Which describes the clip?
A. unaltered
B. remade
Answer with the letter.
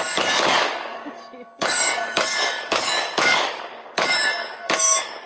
B